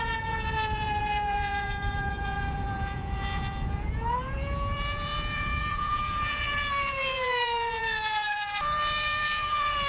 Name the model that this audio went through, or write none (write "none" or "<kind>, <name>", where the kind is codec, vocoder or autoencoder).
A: vocoder, Vocos